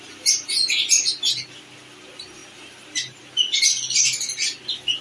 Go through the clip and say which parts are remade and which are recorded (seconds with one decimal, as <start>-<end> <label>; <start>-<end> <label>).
0.0-5.0 recorded